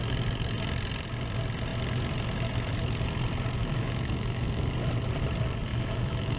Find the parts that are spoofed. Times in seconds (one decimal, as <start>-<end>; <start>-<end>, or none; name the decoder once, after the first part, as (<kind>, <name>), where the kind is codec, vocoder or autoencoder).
3.6-4.7 (autoencoder, DAC-VAE); 5.7-6.4